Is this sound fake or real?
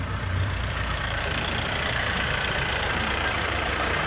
fake